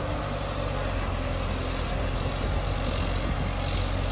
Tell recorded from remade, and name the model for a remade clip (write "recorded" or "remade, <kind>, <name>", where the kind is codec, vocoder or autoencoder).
recorded